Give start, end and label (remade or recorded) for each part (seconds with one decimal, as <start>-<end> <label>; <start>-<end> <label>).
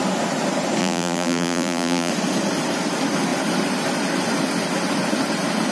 0.0-0.8 recorded; 0.8-2.1 remade; 2.1-5.7 recorded